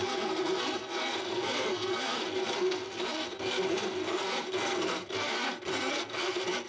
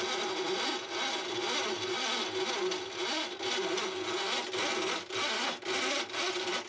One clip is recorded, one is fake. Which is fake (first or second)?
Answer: first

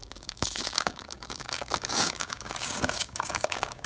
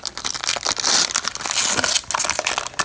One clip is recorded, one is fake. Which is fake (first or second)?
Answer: first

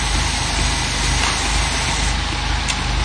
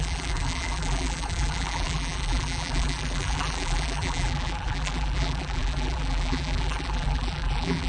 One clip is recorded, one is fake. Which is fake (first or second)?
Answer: second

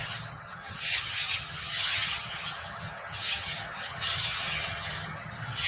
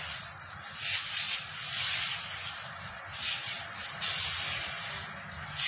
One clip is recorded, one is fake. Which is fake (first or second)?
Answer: first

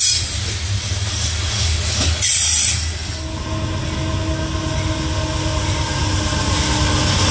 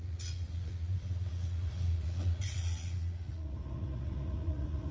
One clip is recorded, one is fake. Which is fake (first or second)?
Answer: second